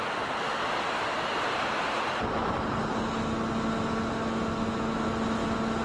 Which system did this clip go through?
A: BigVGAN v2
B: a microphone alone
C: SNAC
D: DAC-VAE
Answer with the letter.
B